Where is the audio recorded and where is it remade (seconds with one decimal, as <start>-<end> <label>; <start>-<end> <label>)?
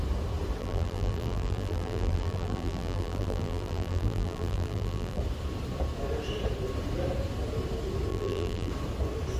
0.0-0.6 recorded; 0.6-5.2 remade; 5.2-8.1 recorded; 8.1-8.7 remade; 8.7-9.4 recorded